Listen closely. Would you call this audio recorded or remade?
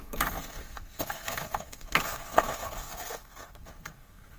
remade